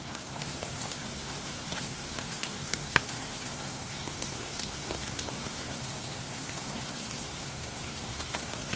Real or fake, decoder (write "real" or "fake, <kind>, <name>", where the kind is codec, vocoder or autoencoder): fake, codec, SNAC